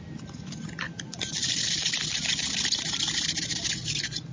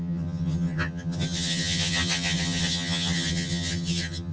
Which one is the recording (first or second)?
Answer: first